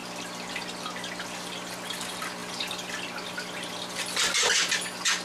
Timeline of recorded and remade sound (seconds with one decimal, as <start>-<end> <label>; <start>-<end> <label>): 0.0-5.2 recorded